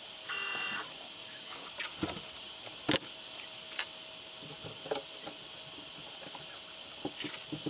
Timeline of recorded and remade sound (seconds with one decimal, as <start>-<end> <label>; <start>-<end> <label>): 0.0-1.2 recorded; 1.2-1.7 remade; 1.7-7.7 recorded